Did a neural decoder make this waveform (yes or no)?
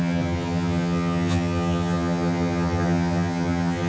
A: yes